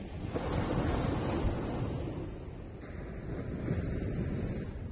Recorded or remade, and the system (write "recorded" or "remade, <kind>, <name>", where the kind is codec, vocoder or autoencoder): recorded